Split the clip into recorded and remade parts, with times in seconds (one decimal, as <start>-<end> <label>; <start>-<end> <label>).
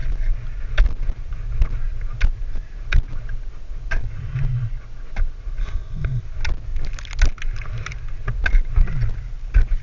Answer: 0.0-5.6 recorded; 5.6-6.2 remade; 6.2-9.8 recorded